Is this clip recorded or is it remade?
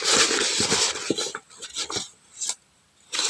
recorded